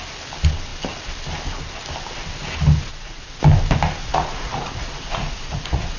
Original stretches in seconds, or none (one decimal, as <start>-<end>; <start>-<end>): 0.0-2.9; 3.4-4.0